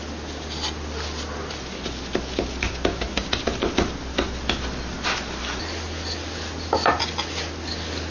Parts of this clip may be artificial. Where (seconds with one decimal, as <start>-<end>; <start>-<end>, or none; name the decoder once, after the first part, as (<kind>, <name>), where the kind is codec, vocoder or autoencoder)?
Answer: none